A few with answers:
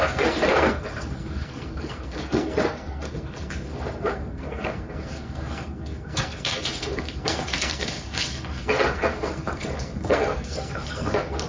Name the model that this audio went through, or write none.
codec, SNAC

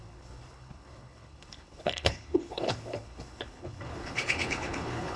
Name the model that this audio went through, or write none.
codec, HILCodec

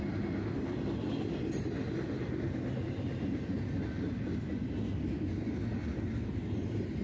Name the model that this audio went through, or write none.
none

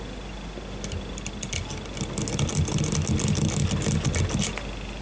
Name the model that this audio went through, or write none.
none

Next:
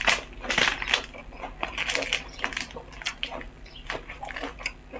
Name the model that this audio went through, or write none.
none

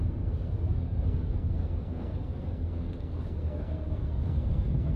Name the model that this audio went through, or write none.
codec, SNAC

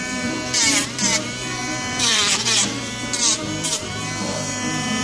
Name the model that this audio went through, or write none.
vocoder, BigVGAN v2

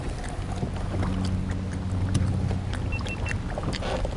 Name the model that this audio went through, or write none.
none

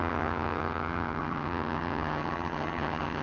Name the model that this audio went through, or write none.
vocoder, HiFi-GAN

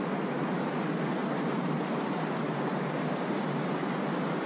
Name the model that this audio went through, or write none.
none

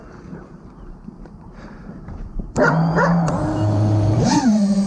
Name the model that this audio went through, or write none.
vocoder, BigVGAN v2